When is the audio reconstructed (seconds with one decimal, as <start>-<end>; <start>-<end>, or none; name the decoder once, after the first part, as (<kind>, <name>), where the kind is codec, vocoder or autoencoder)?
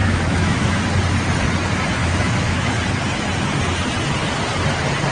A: 0.0-0.8 (autoencoder, DAC-VAE); 2.0-2.7